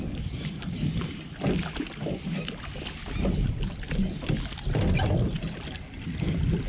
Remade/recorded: recorded